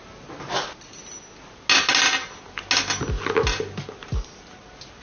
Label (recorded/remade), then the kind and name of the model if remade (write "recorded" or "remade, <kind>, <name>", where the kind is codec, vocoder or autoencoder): recorded